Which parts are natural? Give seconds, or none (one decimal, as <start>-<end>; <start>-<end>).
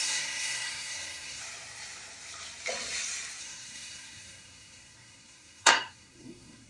1.4-3.4